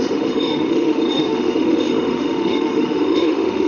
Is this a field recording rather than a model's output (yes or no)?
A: no